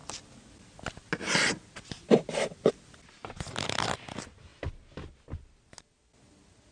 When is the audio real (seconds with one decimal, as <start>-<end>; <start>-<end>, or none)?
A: 0.0-6.7